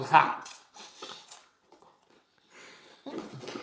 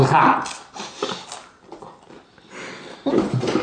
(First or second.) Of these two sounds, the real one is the second